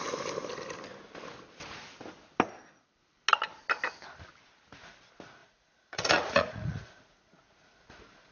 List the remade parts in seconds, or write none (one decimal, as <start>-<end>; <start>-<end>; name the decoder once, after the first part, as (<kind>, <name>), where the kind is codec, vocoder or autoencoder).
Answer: 5.4-8.3 (vocoder, Vocos)